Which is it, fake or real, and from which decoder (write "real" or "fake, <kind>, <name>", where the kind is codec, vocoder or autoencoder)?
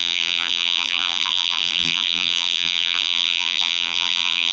fake, vocoder, BigVGAN v2